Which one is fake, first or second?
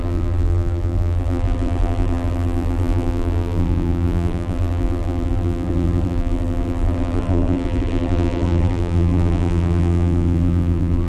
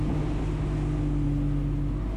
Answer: first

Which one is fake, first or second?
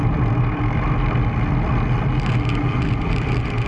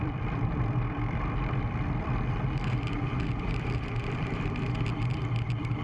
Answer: second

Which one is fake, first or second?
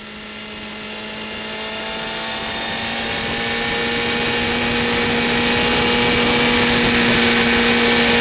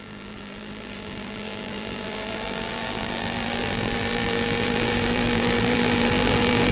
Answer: second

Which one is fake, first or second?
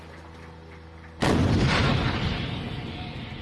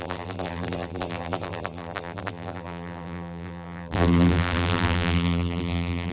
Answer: second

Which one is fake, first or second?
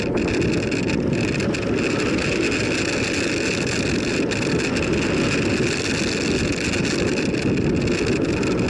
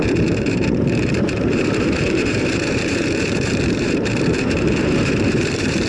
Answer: second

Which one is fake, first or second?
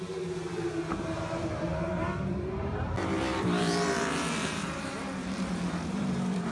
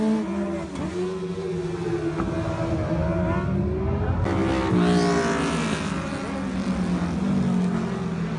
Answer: first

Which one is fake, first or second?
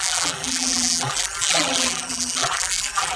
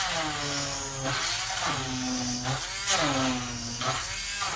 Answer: first